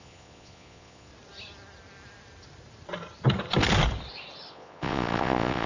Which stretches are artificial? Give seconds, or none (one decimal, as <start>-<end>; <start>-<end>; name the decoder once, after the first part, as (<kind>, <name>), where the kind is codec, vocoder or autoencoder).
0.0-1.1 (vocoder, Vocos); 4.5-5.7